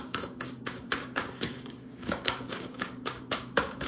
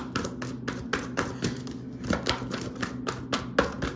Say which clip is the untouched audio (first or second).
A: second